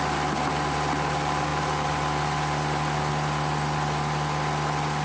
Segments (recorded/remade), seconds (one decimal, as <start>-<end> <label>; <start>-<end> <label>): 0.0-5.0 recorded